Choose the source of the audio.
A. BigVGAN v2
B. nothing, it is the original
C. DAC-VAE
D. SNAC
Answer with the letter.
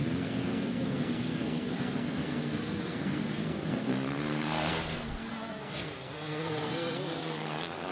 D